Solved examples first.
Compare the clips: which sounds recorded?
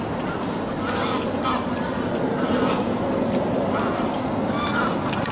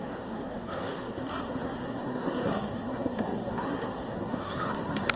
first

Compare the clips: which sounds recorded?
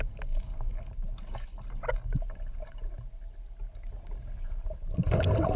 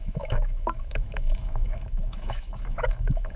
first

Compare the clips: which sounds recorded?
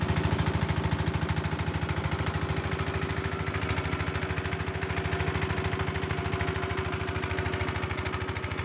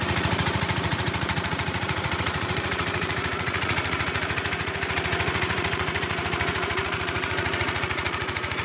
first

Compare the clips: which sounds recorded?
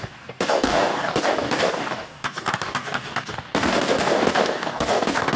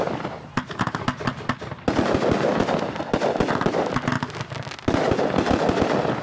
second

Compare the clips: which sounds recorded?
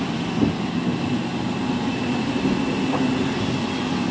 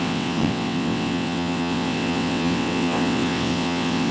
first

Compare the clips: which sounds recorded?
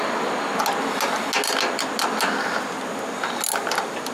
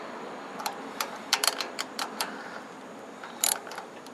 first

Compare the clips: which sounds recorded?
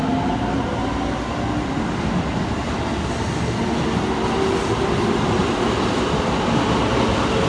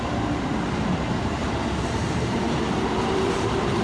first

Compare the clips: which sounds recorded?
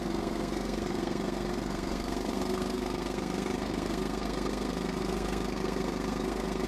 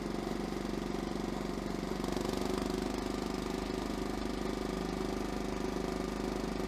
second